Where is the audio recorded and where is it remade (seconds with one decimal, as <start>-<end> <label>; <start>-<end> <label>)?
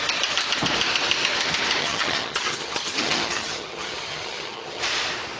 0.0-1.8 recorded; 1.8-4.8 remade; 4.8-5.4 recorded